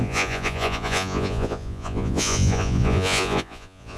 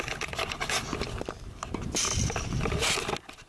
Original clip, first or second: second